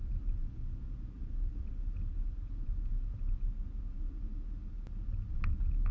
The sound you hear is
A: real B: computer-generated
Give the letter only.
A